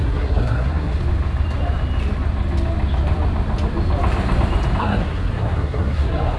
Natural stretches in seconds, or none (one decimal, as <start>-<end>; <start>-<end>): 1.0-4.8